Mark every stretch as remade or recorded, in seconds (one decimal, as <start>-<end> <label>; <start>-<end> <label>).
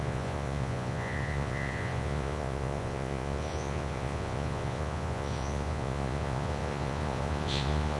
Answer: 0.0-8.0 remade